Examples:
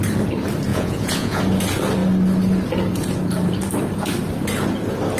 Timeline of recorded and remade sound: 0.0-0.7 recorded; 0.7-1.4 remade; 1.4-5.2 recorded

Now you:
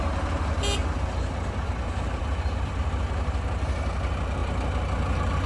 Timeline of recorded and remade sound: 0.0-5.5 recorded

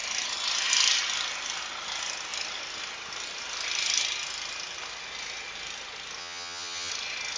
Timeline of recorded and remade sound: 0.0-6.2 recorded; 6.2-6.9 remade; 6.9-7.4 recorded

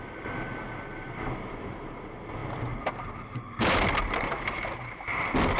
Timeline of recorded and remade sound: 0.0-5.6 recorded

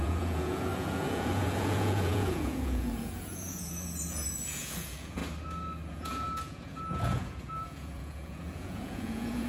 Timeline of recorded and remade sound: 0.0-5.2 remade; 5.2-5.9 recorded; 5.9-9.5 remade

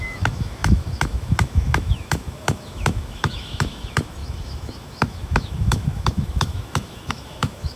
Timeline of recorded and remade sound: 0.0-7.8 remade

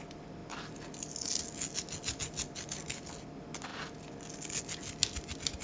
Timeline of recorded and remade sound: 0.0-5.6 recorded

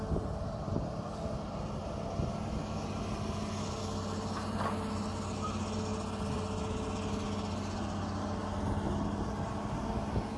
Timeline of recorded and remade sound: 0.0-10.4 recorded